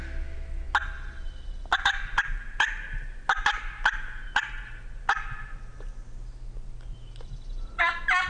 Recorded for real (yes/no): yes